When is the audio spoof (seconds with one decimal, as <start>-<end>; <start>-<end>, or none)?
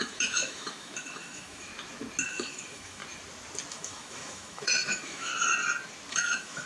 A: 0.0-1.7; 2.2-3.0; 3.7-5.3; 6.1-6.7